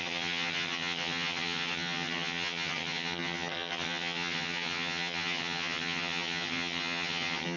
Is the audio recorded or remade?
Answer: remade